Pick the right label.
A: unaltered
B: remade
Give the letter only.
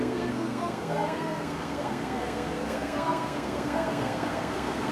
B